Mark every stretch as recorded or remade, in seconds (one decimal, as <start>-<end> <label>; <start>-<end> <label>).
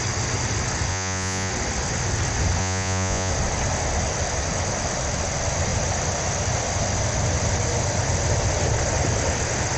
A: 0.0-0.9 recorded; 0.9-1.5 remade; 1.5-2.6 recorded; 2.6-3.3 remade; 3.3-9.8 recorded